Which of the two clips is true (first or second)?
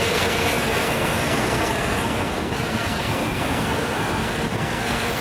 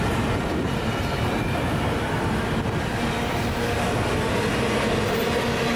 second